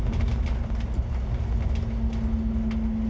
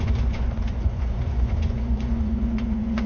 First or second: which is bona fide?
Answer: first